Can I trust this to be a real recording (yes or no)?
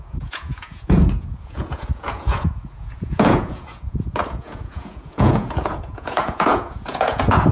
no